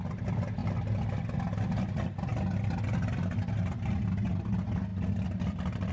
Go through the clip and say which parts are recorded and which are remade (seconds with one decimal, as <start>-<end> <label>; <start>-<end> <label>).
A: 0.0-5.9 recorded